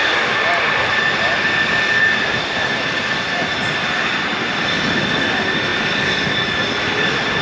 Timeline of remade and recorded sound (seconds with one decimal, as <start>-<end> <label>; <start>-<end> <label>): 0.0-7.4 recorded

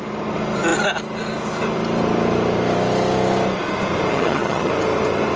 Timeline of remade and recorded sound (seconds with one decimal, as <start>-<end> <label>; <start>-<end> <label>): 0.0-4.1 recorded; 4.1-4.7 remade; 4.7-5.4 recorded

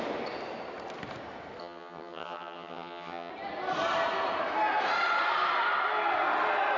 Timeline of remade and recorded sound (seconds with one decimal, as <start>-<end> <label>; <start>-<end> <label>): 0.0-1.6 recorded; 1.6-3.3 remade; 3.3-6.8 recorded

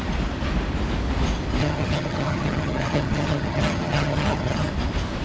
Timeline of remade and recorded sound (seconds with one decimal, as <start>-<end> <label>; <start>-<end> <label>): 0.0-1.6 recorded; 1.6-4.7 remade; 4.7-5.2 recorded

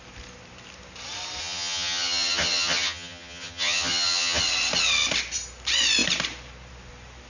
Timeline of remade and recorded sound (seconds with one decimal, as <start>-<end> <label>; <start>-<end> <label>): 0.0-1.4 recorded; 1.4-4.4 remade; 4.4-7.3 recorded